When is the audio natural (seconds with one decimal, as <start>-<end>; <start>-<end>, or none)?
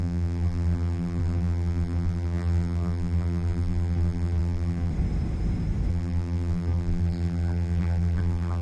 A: 4.9-5.9